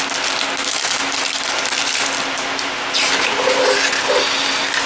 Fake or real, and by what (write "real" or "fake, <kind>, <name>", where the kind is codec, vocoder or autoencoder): real